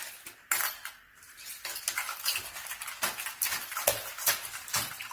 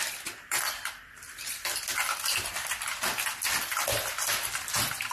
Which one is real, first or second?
first